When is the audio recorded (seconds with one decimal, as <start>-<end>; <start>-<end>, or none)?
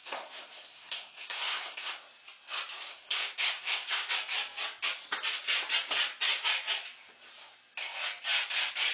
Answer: 2.0-2.9; 4.1-8.9